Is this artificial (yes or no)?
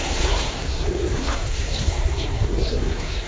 yes